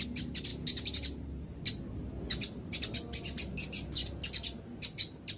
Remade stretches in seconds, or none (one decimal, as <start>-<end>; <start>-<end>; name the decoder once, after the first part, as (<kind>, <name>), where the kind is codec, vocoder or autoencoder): none